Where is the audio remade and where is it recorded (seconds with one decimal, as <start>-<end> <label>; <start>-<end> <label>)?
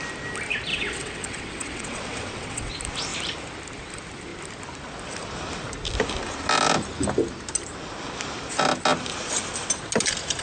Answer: 0.0-0.7 recorded; 0.7-2.7 remade; 2.7-10.4 recorded